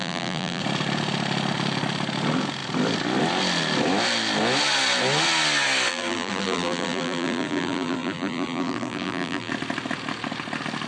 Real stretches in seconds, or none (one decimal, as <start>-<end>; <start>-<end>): 0.6-5.9; 9.5-10.9